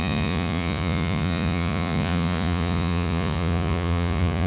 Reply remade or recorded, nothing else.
remade